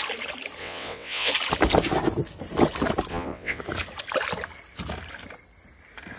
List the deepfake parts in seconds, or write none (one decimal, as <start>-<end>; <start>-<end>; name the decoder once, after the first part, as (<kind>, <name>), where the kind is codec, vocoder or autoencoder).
0.6-1.3 (vocoder, WaveNeXt); 3.1-3.6